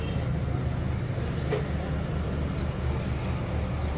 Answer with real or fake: real